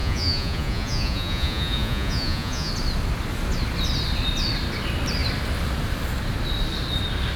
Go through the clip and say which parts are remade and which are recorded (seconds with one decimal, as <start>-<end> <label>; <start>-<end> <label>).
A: 0.0-2.7 remade; 2.7-7.4 recorded